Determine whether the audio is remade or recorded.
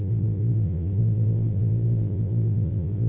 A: remade